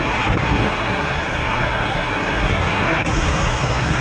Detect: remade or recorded remade